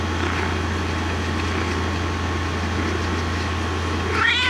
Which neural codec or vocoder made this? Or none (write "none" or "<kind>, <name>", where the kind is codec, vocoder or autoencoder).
none